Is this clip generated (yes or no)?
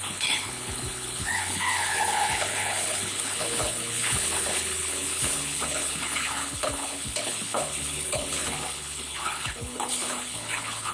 yes